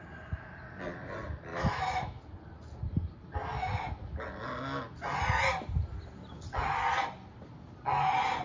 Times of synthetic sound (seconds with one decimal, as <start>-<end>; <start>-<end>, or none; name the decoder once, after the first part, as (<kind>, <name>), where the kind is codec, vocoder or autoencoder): 1.5-2.2 (autoencoder, DAC-VAE)